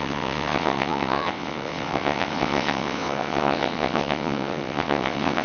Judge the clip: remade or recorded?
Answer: remade